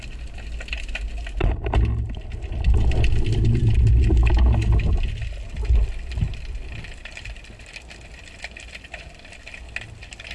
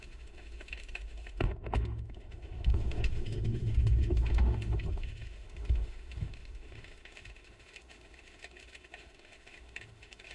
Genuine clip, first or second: first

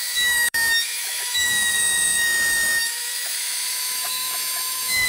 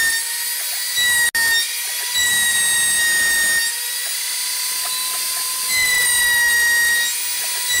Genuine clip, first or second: second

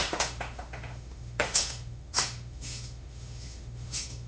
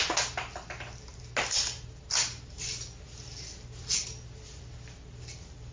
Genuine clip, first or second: second